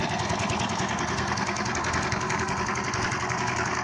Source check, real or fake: fake